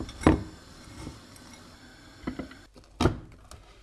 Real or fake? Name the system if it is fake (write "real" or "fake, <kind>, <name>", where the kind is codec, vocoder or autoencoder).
real